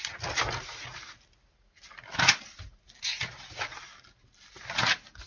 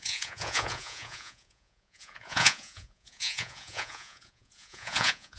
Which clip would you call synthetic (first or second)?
second